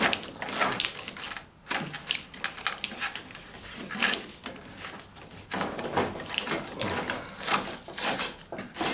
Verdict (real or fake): real